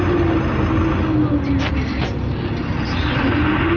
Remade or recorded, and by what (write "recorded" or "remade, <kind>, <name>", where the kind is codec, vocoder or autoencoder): recorded